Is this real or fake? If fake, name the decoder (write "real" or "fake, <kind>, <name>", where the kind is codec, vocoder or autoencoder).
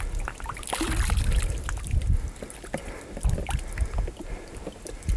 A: real